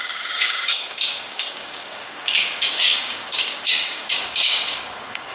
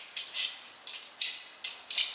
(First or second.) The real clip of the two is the second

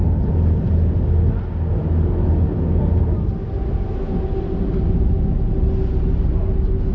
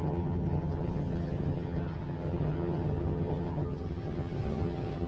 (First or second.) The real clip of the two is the first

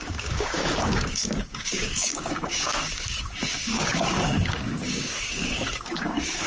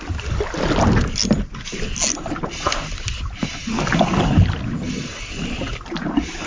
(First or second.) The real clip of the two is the second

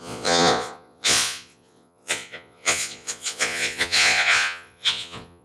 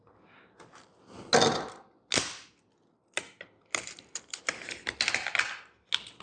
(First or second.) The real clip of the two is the second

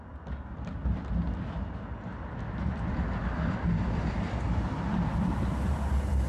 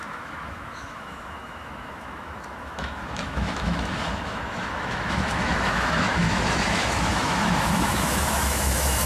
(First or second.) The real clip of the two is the first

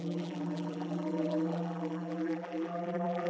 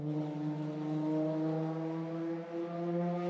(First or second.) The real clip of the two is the second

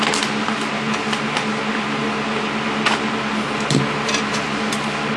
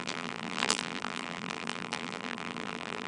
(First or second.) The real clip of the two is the first